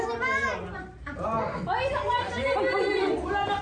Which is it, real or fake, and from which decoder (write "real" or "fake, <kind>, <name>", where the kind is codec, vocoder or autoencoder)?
real